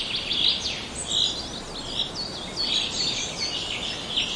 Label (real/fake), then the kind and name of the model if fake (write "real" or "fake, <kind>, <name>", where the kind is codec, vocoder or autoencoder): real